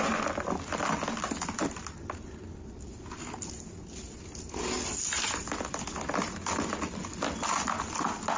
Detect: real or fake real